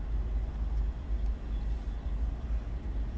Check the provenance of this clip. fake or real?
real